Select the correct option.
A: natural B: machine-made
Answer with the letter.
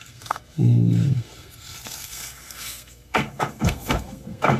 B